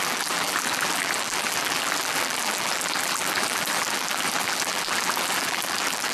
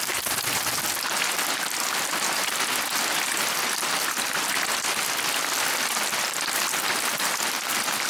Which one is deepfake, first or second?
first